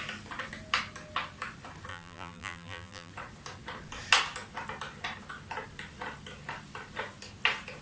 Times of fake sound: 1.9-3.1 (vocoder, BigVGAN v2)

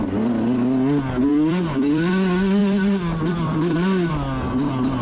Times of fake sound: 1.3-2.1 (vocoder, BigVGAN v2); 2.6-4.1

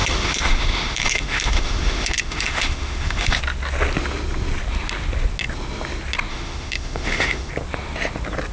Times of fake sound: 0.0-3.4 (autoencoder, DAC-VAE); 6.3-7.5

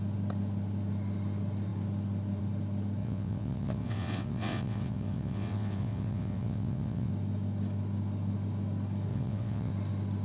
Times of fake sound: 3.0-7.1 (vocoder, WaveNeXt); 9.1-9.7